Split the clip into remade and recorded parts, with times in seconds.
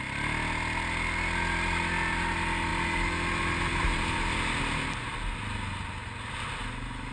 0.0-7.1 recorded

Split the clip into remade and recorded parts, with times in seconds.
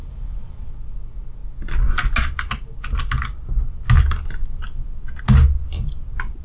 0.0-0.7 remade; 0.7-6.4 recorded